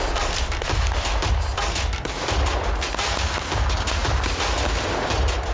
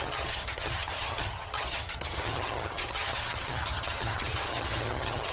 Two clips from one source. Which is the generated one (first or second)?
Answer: second